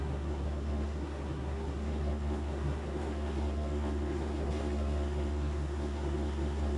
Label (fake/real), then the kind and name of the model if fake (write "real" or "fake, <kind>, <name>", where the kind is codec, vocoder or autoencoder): fake, codec, SNAC